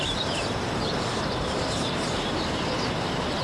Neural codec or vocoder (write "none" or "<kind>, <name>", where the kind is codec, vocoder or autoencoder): vocoder, BigVGAN v2